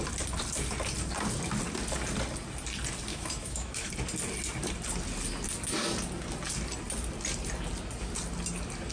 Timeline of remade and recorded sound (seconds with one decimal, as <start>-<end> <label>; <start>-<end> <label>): 0.0-3.1 recorded; 3.1-3.9 remade; 3.9-8.9 recorded